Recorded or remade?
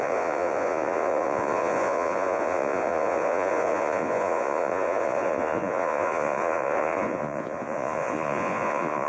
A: remade